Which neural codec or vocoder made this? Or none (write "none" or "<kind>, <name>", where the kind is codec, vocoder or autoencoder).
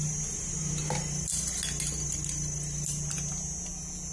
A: none